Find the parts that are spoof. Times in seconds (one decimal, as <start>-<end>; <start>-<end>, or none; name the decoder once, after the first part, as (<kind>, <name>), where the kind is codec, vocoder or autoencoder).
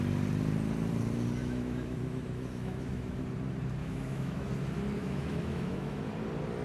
1.4-3.2 (autoencoder, DAC-VAE); 3.8-4.5; 5.0-6.1